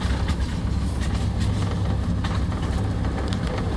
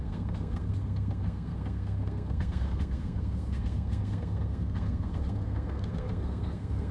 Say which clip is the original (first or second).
first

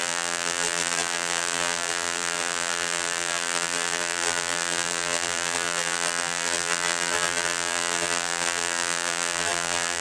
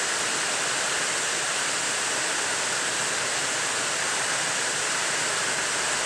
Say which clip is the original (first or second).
second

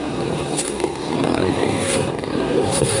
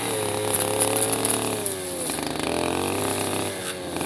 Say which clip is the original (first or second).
second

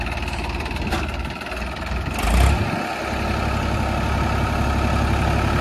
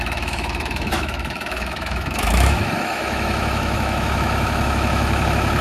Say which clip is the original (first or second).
first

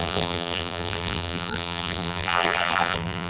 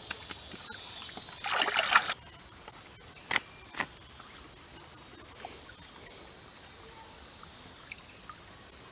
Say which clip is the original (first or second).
second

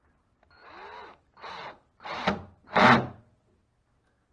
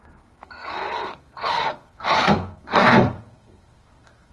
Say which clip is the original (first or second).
first